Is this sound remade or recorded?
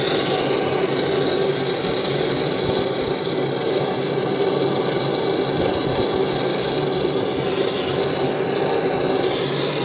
recorded